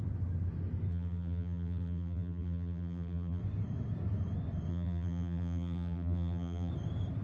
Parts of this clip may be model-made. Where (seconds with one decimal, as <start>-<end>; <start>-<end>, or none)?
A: 0.9-3.4; 4.7-6.7